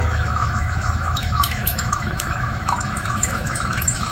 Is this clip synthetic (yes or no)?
yes